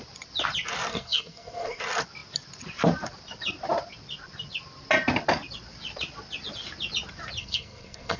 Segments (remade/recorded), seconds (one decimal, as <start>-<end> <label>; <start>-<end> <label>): 0.0-0.9 recorded; 0.9-1.8 remade; 1.8-7.4 recorded; 7.4-8.2 remade